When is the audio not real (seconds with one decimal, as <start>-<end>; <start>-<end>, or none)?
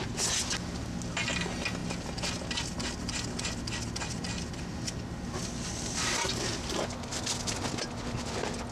none